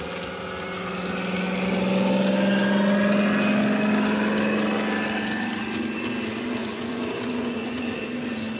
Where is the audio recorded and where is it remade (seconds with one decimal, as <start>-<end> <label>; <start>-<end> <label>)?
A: 0.0-6.6 recorded; 6.6-8.0 remade; 8.0-8.6 recorded